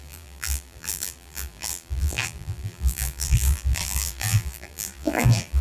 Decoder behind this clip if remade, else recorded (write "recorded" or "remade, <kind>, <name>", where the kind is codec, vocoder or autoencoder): remade, vocoder, BigVGAN v2